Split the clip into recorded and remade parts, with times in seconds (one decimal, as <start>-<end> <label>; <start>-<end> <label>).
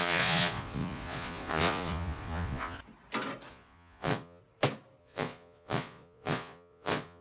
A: 0.0-2.8 remade; 2.8-3.5 recorded; 3.5-4.4 remade; 4.4-5.0 recorded; 5.0-7.2 remade